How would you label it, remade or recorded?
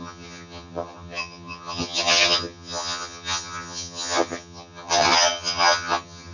remade